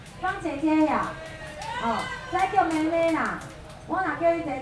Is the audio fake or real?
real